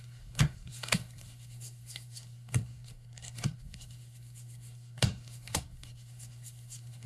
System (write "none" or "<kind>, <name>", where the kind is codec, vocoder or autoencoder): codec, SNAC